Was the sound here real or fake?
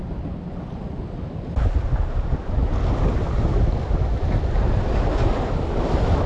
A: real